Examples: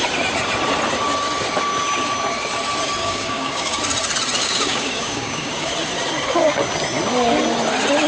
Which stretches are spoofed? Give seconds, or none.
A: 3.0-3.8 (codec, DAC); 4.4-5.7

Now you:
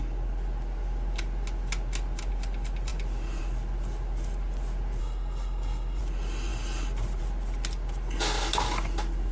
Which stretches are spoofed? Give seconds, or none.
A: 5.0-6.0 (codec, SNAC)

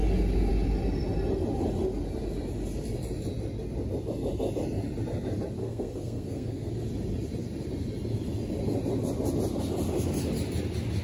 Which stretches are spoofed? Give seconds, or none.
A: 5.6-6.7 (codec, SNAC)

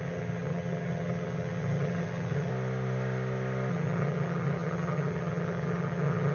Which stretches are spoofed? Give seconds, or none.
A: 0.0-2.5 (vocoder, HiFi-GAN); 3.7-6.3

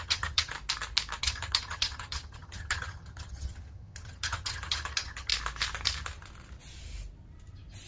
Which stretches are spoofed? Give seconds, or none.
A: 0.0-0.5 (vocoder, HiFi-GAN); 1.2-5.3

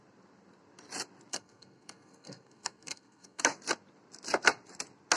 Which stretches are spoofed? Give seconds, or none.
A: 1.3-3.4 (codec, SNAC)

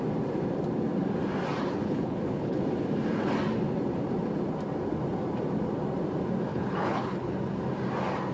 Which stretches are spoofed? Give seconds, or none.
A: 1.8-2.6 (codec, HILCodec); 6.5-7.3